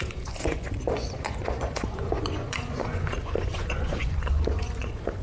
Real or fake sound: fake